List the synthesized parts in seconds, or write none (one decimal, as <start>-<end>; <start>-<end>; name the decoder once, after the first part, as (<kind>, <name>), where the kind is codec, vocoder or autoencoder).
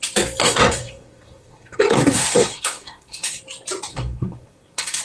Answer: 0.4-3.4 (codec, SNAC); 3.9-5.0